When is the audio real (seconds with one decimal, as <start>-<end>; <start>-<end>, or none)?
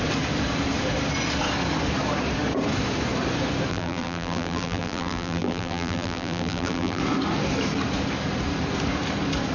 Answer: 0.0-3.7; 7.0-9.5